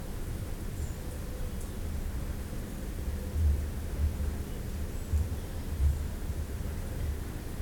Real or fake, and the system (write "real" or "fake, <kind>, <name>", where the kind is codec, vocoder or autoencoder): real